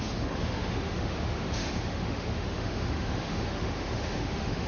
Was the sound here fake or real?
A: fake